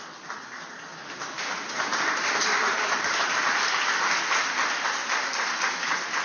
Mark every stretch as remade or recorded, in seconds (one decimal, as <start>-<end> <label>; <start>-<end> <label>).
0.0-0.9 recorded; 0.9-3.3 remade; 3.3-6.2 recorded

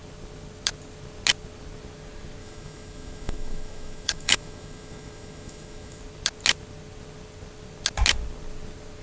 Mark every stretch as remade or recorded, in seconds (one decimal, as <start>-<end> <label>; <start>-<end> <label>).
0.0-2.4 recorded; 2.4-6.0 remade; 6.0-9.0 recorded

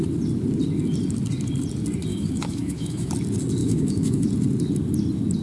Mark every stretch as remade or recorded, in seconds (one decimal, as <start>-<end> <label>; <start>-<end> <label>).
0.0-2.1 recorded; 2.1-3.1 remade; 3.1-3.6 recorded; 3.6-4.3 remade; 4.3-5.4 recorded

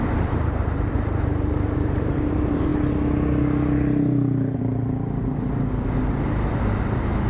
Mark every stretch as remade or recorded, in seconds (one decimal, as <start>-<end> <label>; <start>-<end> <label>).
0.0-2.7 remade; 2.7-7.3 recorded

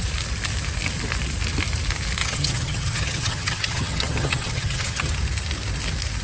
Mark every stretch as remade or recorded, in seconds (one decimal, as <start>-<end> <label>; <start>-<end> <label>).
0.0-2.2 recorded; 2.2-5.1 remade; 5.1-6.2 recorded

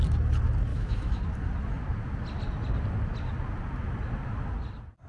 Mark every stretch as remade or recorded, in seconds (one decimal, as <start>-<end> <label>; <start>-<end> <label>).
0.0-0.7 recorded; 0.7-1.2 remade; 1.2-5.1 recorded

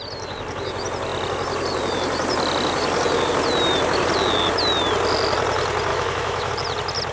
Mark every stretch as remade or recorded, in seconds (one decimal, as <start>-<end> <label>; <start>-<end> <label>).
0.0-5.9 recorded; 5.9-6.5 remade; 6.5-7.1 recorded

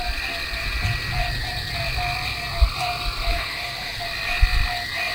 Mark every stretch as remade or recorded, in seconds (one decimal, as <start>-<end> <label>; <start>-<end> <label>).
0.0-3.3 recorded; 3.3-4.0 remade; 4.0-5.1 recorded